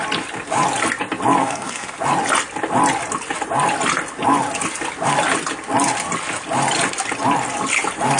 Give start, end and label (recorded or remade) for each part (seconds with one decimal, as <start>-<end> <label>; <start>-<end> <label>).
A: 0.0-1.4 recorded; 1.4-2.0 remade; 2.0-8.2 recorded